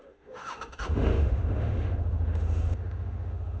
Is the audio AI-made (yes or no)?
yes